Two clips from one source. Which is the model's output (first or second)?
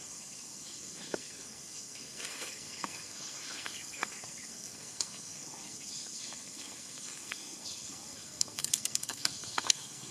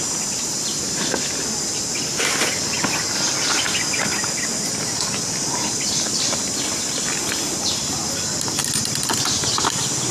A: first